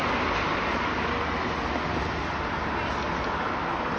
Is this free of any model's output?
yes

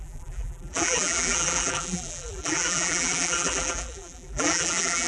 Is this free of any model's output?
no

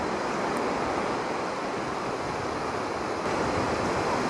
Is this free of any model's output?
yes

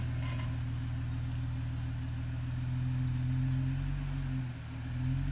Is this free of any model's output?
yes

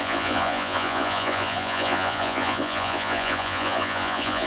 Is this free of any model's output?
no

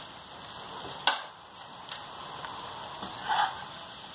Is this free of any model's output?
yes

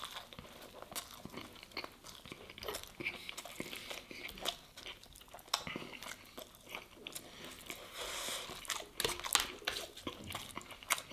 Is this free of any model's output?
yes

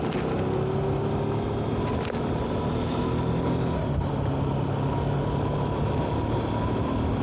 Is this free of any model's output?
yes